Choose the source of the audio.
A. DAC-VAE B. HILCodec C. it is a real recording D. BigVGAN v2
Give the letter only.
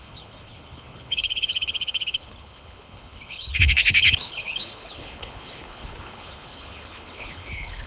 B